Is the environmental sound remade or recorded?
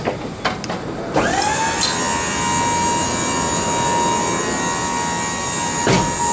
recorded